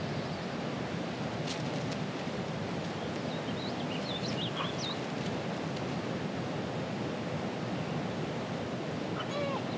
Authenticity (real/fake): real